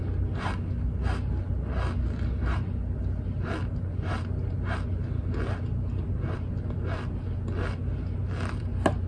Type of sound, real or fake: real